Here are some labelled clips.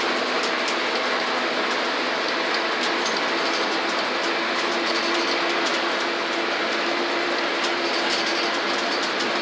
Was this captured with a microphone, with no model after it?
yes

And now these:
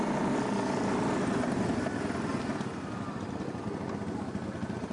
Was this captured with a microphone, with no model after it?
yes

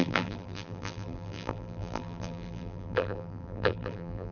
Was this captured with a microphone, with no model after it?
no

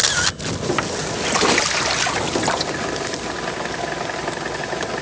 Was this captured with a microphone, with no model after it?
yes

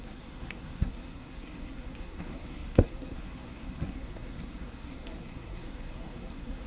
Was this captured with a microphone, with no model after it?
no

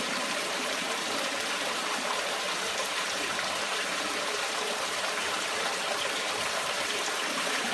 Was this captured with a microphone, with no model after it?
no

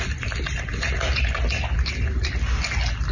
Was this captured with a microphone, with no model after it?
yes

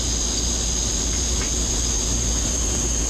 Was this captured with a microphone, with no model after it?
yes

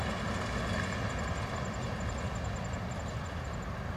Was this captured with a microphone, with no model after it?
yes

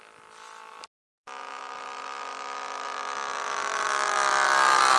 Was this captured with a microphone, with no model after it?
yes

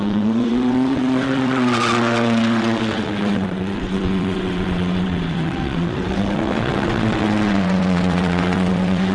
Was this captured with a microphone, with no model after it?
no